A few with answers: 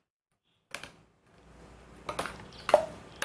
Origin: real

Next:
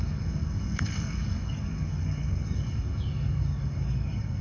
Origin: fake